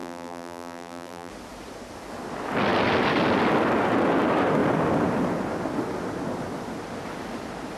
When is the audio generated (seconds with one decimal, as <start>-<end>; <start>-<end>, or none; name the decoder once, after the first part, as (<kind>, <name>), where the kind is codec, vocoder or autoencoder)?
0.0-1.3 (vocoder, BigVGAN v2)